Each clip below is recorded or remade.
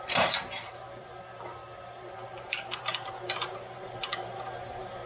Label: remade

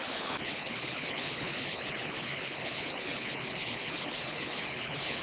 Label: remade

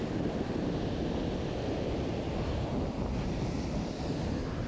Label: recorded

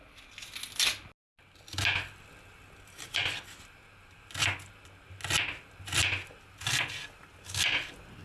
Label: recorded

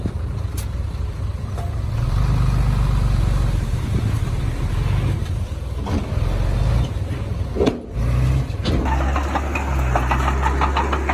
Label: recorded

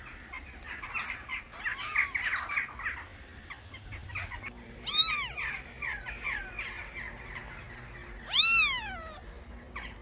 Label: recorded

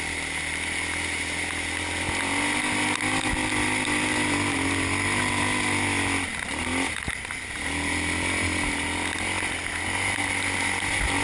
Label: recorded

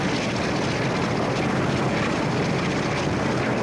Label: recorded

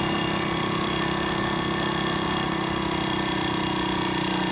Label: recorded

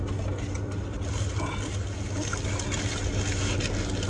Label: recorded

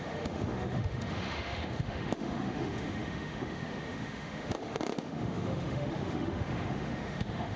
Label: remade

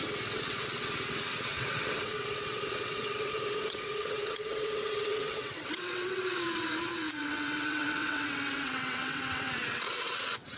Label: remade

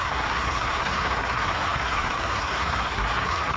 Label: remade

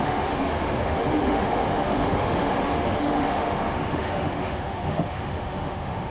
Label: remade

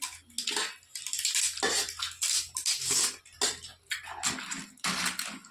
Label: recorded